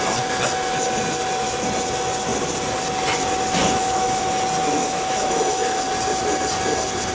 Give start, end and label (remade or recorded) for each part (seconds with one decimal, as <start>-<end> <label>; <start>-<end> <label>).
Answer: 0.0-3.6 recorded; 3.6-4.2 remade; 4.2-4.8 recorded; 4.8-5.8 remade; 5.8-7.1 recorded